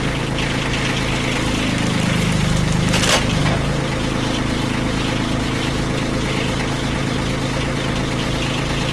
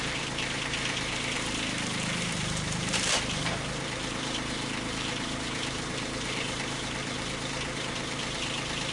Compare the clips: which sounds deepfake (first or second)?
second